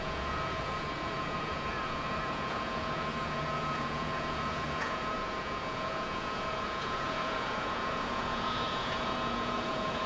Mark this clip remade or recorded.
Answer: remade